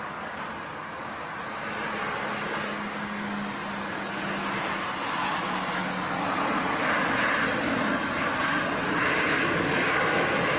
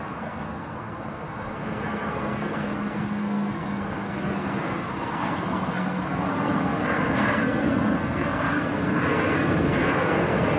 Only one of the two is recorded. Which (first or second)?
first